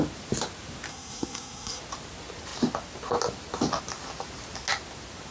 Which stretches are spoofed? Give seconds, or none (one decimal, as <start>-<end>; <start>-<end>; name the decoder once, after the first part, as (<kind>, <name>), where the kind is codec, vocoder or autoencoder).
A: 0.9-1.8 (codec, SNAC)